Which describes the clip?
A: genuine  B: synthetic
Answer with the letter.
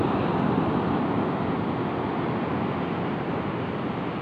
A